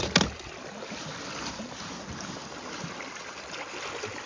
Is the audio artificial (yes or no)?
no